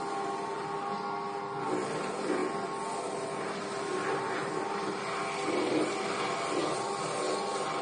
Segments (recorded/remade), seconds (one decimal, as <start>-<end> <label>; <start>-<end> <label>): 0.0-7.8 recorded